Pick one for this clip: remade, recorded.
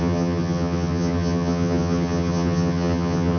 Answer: remade